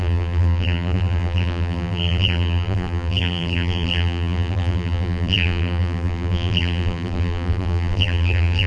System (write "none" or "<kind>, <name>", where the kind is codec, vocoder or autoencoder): vocoder, BigVGAN v2